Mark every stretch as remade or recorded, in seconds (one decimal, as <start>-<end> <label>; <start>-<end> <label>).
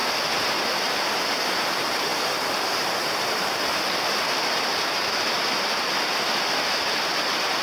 0.0-7.6 recorded